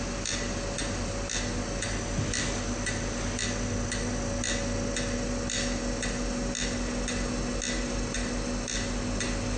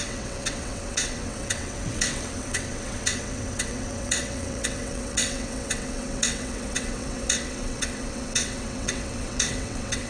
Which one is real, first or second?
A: first